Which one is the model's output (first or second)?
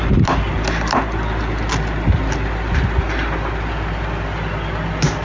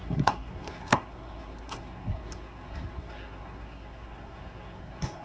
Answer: second